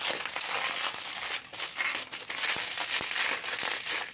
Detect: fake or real real